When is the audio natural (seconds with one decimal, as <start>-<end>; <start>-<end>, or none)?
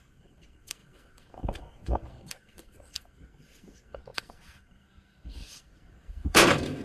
none